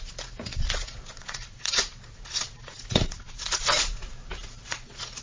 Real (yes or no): no